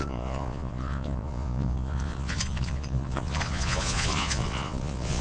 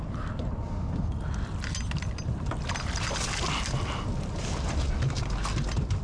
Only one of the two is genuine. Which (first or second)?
second